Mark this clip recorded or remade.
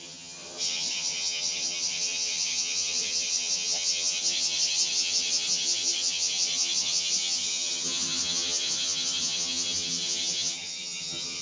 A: remade